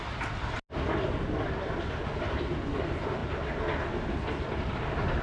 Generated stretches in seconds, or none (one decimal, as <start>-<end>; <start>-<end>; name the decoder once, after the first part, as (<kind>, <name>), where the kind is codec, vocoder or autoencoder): none